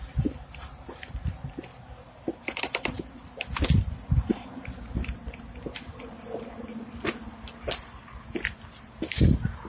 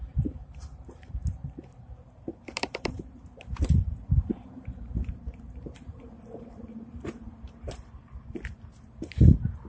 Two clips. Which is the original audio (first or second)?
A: first